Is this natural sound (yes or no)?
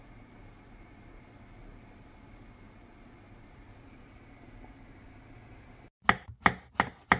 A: yes